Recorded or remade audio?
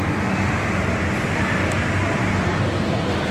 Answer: recorded